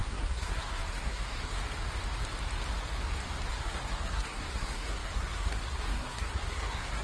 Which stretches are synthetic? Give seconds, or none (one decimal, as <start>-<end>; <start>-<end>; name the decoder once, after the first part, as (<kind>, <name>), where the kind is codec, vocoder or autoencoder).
0.0-1.6 (codec, SNAC); 3.5-7.0